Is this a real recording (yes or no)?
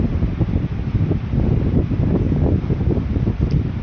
yes